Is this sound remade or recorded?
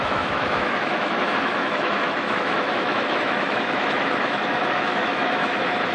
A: remade